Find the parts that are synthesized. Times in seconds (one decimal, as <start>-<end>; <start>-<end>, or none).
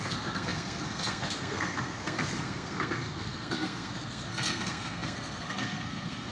0.0-6.3